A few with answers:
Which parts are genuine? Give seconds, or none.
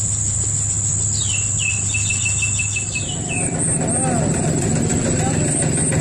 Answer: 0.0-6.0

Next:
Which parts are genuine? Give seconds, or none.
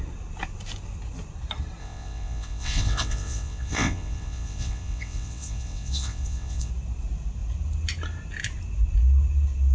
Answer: 0.0-1.8; 6.7-9.7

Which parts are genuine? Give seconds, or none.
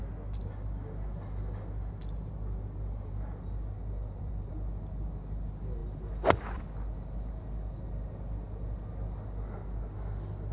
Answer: 0.0-3.8; 4.5-5.8; 6.6-10.5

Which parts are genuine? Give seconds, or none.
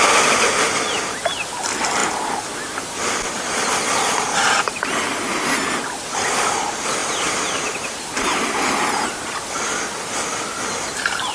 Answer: 0.0-7.0; 9.3-11.3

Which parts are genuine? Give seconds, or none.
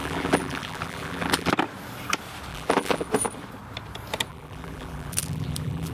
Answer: 1.5-2.5; 3.1-4.3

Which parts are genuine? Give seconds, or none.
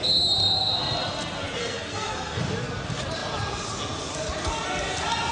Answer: 0.0-1.6; 2.4-5.3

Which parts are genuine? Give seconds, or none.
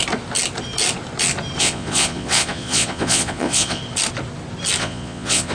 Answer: 0.0-1.6; 3.8-4.8